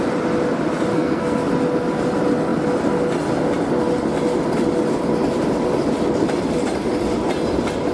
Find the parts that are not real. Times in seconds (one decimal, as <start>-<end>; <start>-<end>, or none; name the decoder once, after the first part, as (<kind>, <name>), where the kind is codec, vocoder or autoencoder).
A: 0.9-1.4 (codec, SNAC)